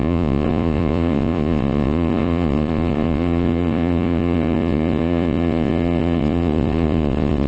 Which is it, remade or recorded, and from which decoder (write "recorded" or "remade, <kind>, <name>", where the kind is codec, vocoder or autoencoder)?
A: remade, vocoder, Vocos